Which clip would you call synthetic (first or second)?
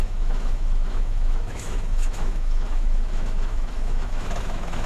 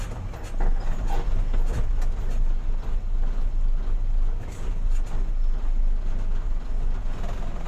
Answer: first